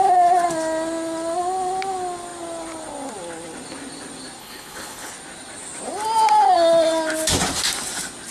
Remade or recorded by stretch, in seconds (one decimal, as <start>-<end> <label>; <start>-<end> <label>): 0.0-4.4 recorded; 4.4-5.1 remade; 5.1-8.3 recorded